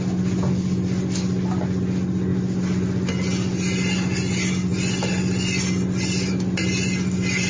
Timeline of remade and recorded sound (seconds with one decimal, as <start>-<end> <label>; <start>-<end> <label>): 0.0-7.5 recorded